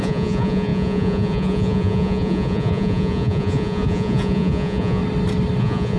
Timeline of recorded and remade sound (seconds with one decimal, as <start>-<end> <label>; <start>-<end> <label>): 0.0-5.0 remade; 5.0-5.6 recorded; 5.6-6.0 remade